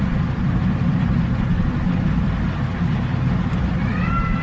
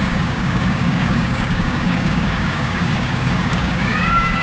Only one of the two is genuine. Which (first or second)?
first